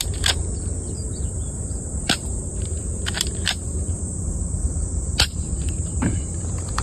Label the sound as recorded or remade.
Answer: remade